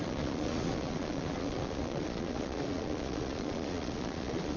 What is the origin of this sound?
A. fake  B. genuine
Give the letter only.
A